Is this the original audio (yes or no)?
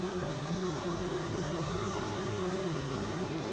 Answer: no